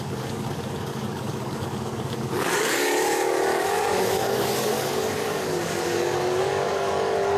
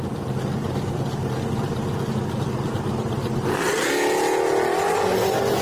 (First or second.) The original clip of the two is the second